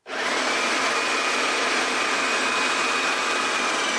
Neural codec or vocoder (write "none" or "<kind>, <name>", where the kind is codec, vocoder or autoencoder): none